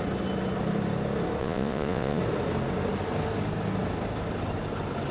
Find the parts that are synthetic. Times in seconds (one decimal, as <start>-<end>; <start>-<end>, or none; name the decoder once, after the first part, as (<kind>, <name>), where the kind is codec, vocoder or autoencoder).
1.4-2.2 (vocoder, Vocos)